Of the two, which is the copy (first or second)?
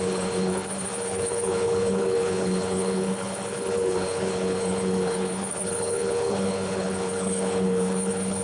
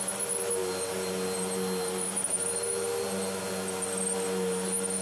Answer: first